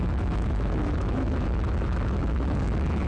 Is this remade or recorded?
remade